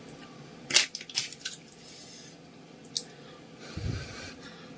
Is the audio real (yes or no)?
yes